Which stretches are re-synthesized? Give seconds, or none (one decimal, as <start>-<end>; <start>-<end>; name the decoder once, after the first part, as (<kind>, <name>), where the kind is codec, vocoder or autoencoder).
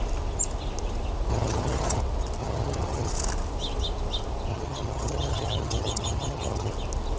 1.3-2.0 (vocoder, HiFi-GAN); 2.4-3.1; 4.5-6.7